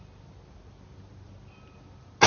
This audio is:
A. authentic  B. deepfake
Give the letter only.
A